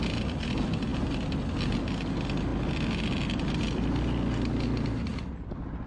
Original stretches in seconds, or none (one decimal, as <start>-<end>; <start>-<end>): 0.0-5.9